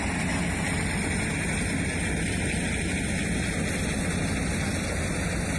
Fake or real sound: real